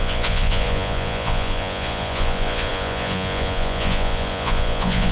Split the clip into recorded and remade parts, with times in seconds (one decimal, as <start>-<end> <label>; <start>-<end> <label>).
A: 0.0-5.1 remade